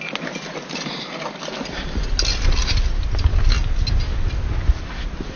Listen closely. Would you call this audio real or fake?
real